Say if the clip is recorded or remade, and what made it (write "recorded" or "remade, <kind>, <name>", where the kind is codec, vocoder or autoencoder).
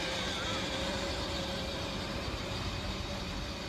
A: remade, vocoder, BigVGAN v2